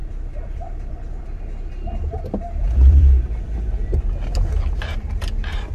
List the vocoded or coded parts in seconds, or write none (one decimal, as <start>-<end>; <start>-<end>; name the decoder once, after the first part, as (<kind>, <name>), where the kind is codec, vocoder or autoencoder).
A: 0.0-3.4 (vocoder, BigVGAN v2)

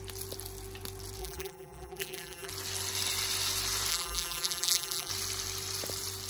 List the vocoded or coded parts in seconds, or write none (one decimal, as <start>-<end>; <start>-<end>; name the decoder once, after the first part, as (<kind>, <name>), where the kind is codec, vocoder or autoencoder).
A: 1.2-2.5 (vocoder, BigVGAN v2); 3.9-5.1